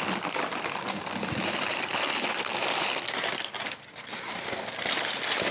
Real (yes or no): yes